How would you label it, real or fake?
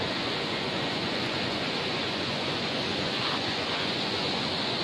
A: fake